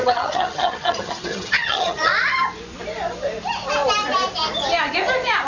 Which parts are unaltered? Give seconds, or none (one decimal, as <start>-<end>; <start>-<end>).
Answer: 2.1-5.5